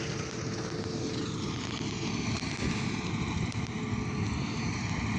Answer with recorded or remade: recorded